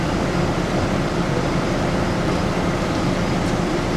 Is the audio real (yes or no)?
no